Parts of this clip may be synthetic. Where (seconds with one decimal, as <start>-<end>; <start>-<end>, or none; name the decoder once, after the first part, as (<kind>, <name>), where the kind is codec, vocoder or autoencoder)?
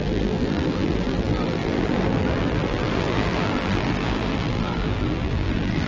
0.0-5.9 (vocoder, BigVGAN v2)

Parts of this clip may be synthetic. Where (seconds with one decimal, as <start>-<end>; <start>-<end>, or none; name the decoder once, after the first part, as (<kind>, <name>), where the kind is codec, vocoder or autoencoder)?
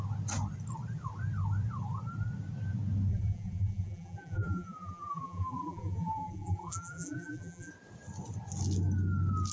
3.1-7.7 (vocoder, BigVGAN v2)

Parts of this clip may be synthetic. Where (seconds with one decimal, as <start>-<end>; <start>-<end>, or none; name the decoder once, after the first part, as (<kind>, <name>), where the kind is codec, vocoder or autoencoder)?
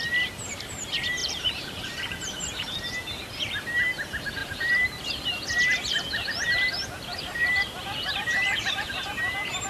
1.2-2.7 (vocoder, BigVGAN v2); 4.4-5.1; 7.1-9.2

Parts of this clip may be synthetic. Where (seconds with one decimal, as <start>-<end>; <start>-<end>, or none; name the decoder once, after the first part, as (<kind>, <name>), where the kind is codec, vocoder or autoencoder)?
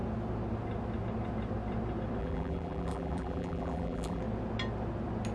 2.2-4.2 (vocoder, BigVGAN v2)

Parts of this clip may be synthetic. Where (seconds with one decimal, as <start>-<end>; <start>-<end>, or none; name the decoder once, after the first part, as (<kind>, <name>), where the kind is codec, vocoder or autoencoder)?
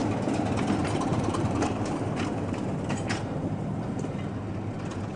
1.1-4.2 (vocoder, BigVGAN v2)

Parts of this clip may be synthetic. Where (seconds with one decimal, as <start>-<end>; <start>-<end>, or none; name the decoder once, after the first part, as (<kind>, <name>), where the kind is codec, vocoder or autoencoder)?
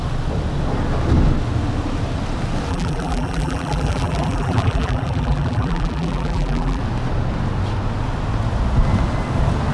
2.7-6.8 (vocoder, BigVGAN v2)